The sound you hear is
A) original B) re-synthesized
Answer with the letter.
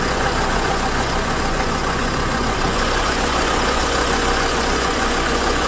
B